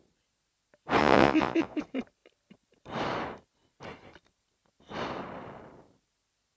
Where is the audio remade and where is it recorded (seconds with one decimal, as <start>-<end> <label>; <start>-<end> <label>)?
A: 0.0-1.0 recorded; 1.0-1.8 remade; 1.8-6.6 recorded